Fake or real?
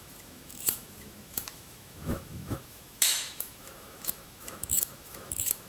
fake